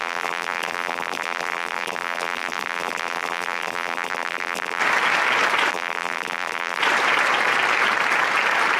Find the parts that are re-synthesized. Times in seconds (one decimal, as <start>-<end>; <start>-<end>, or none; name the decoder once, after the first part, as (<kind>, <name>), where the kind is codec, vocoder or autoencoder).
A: 0.0-4.8 (vocoder, BigVGAN v2); 5.7-6.8